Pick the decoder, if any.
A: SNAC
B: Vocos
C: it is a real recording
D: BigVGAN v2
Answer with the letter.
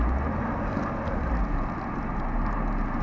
C